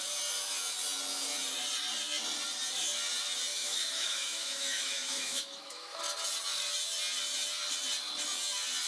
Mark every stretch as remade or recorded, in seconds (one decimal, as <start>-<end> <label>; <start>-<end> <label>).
0.0-3.5 recorded; 3.5-6.0 remade; 6.0-8.9 recorded